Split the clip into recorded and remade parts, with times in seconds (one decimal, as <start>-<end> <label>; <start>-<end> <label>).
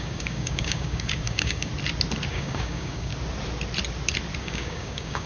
0.0-1.7 remade; 1.7-2.3 recorded; 2.3-3.1 remade; 3.1-4.4 recorded; 4.4-5.3 remade